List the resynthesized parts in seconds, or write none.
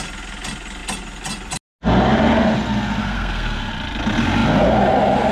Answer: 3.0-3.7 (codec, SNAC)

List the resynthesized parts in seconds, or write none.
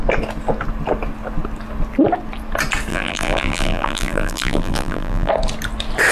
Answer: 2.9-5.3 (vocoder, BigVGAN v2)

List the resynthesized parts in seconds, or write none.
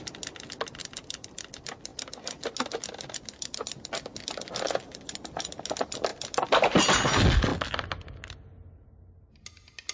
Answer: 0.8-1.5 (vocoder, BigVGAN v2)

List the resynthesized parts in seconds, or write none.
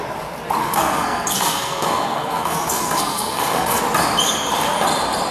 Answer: 0.6-3.8 (codec, SNAC)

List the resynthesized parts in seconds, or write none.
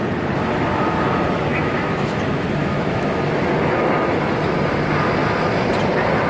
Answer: 1.5-2.2 (autoencoder, DAC-VAE); 2.6-3.2